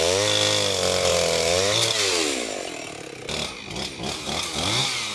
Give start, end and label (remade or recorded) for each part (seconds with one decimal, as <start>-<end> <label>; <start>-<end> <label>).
0.0-5.1 recorded